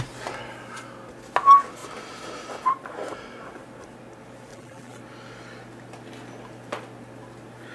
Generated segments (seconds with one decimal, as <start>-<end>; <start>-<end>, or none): 4.5-5.0